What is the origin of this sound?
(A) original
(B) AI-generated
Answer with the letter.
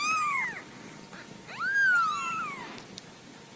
A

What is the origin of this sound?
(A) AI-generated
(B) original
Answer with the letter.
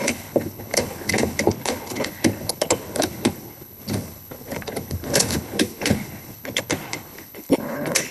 A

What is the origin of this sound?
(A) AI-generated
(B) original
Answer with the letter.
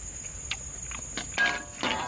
B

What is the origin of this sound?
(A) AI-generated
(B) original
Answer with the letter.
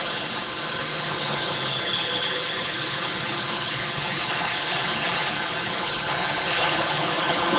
A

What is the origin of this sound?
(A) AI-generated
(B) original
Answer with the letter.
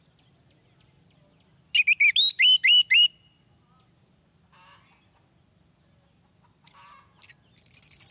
B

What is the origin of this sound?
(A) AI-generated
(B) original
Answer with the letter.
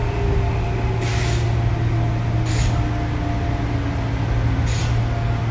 B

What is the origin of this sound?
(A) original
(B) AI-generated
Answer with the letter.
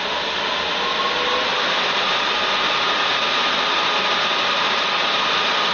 A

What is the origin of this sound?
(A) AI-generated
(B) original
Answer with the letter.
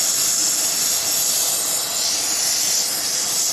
B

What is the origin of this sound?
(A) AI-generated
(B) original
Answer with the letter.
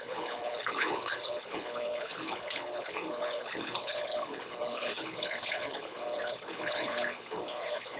A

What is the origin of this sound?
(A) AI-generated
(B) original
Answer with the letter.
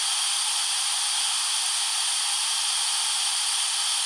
B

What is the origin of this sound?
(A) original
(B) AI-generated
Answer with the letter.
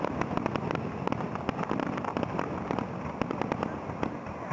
A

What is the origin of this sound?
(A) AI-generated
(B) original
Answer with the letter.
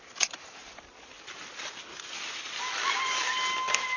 B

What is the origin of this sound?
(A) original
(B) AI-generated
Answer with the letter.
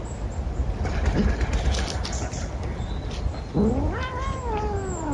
A